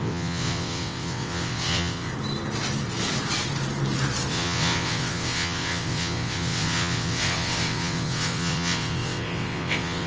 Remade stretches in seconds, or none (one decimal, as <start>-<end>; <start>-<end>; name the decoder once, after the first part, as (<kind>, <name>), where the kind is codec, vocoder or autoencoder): 0.0-2.1 (vocoder, WaveNeXt); 4.3-10.1